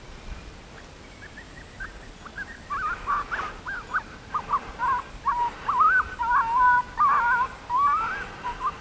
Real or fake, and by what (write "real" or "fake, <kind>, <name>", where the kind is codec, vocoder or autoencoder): real